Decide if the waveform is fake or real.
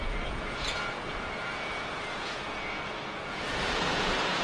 fake